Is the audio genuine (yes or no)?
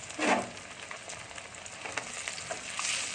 yes